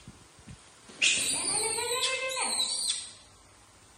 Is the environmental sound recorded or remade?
recorded